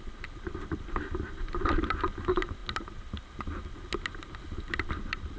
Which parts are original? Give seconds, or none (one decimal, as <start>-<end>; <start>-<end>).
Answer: 2.6-4.7